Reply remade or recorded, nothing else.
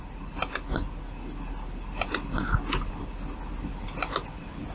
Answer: recorded